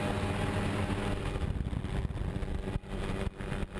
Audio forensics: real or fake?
real